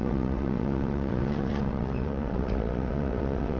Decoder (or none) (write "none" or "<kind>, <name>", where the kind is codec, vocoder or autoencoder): vocoder, WaveNeXt